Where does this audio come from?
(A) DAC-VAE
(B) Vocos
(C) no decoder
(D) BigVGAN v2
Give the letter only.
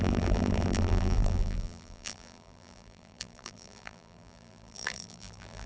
D